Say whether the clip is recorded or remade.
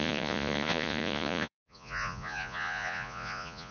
remade